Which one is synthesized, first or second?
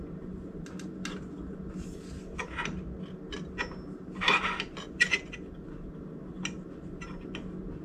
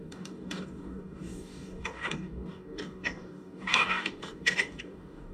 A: second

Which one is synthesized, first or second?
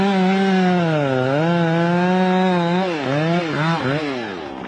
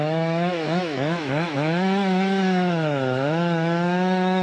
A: second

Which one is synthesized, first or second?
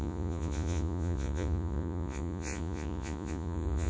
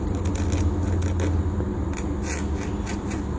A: first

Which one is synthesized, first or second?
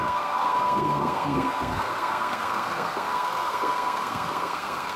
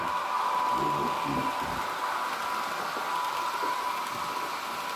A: first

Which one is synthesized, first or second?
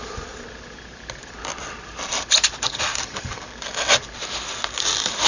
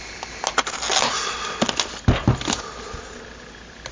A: first